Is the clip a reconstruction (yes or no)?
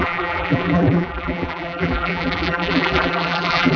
yes